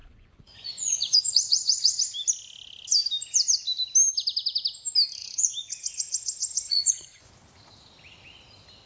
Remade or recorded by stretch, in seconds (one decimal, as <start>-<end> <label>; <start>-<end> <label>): 0.0-2.0 remade; 2.0-5.2 recorded; 5.2-7.3 remade; 7.3-8.9 recorded